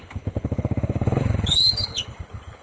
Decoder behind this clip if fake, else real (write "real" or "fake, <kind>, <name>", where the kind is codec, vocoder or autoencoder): fake, codec, HILCodec